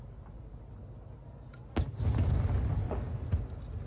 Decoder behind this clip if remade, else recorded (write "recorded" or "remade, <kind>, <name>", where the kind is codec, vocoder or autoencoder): recorded